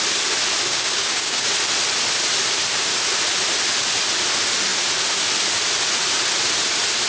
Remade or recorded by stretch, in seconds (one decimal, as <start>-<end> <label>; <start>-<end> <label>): 0.0-0.7 recorded; 0.7-1.5 remade; 1.5-7.1 recorded